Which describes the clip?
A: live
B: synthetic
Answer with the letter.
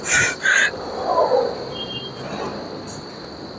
A